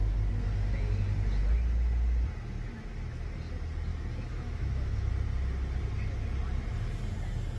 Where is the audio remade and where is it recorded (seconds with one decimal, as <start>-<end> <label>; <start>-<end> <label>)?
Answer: 0.0-3.9 recorded; 3.9-5.1 remade; 5.1-7.6 recorded